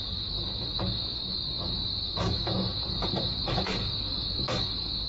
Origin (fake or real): fake